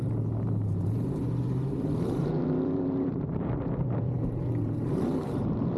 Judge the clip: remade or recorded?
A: remade